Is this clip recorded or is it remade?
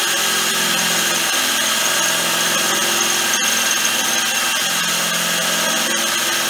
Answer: recorded